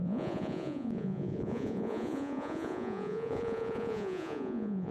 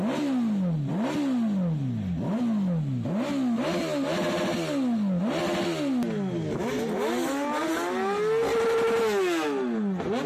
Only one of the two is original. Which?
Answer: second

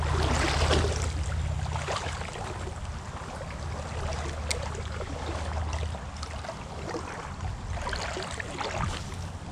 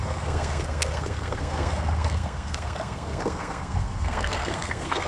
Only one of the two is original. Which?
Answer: first